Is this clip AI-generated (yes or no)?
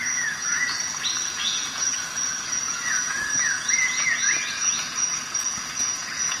yes